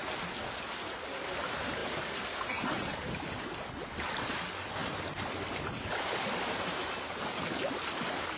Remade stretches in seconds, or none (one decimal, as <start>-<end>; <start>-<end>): none